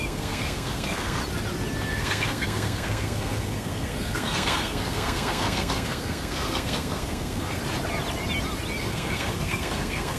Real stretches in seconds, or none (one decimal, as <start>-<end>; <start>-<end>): 1.2-1.9; 7.6-8.8